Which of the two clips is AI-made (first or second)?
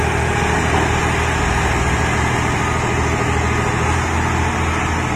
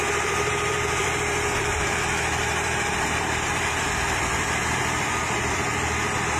second